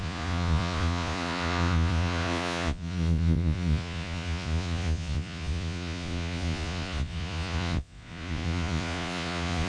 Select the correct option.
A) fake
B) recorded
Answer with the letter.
A